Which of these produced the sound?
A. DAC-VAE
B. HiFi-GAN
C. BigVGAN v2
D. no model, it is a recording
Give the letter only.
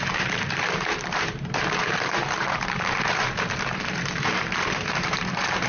C